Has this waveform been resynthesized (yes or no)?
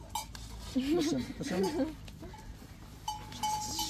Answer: no